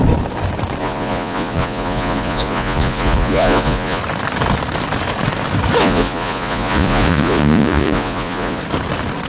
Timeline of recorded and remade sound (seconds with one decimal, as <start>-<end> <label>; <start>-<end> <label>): 0.0-0.8 recorded; 0.8-4.0 remade; 4.0-5.8 recorded; 5.8-8.6 remade; 8.6-9.3 recorded